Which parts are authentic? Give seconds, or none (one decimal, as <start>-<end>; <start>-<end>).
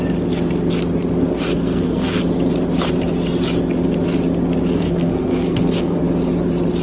0.0-1.5; 2.2-4.7; 6.0-6.8